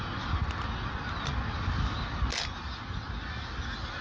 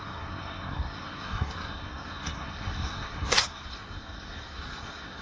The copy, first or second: second